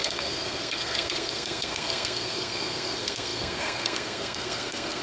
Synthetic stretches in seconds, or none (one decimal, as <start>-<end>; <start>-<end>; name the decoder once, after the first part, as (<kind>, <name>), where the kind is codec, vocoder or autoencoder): 0.0-5.0 (codec, SNAC)

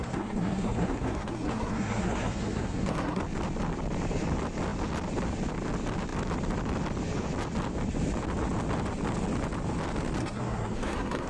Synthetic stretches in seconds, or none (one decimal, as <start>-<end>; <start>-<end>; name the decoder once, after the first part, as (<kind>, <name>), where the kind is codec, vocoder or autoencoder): 0.0-3.2 (codec, SNAC); 10.2-11.3

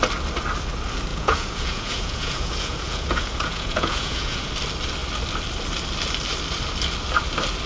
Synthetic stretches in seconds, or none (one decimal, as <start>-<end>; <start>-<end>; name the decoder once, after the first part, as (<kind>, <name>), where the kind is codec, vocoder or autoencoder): 1.1-4.5 (vocoder, Vocos)

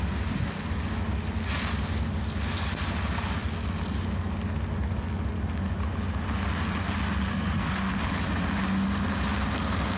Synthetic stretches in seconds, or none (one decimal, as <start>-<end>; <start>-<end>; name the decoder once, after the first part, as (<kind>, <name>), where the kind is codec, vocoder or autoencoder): 7.3-7.9 (codec, SNAC)

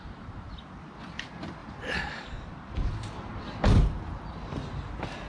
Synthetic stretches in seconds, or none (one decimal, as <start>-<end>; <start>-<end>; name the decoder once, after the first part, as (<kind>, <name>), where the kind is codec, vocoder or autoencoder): none